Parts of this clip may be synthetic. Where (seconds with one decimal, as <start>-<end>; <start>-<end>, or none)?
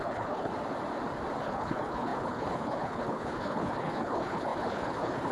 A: 0.0-0.5; 1.4-5.3